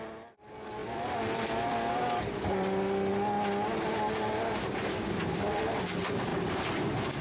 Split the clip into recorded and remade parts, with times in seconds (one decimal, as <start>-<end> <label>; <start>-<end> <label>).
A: 0.0-0.8 recorded; 0.8-1.7 remade; 1.7-7.2 recorded